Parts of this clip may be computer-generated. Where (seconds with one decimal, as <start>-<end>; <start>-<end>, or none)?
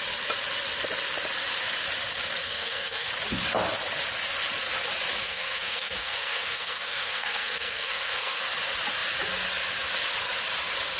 2.4-3.1; 5.2-8.4